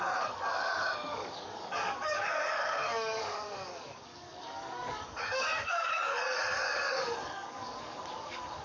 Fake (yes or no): yes